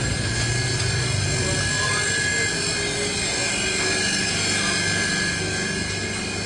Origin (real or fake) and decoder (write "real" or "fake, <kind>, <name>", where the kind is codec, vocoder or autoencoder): real